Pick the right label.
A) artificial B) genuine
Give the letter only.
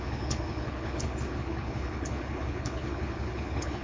A